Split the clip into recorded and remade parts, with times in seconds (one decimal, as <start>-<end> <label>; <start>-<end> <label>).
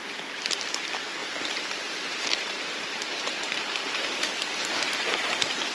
0.0-1.2 recorded; 1.2-3.9 remade; 3.9-5.7 recorded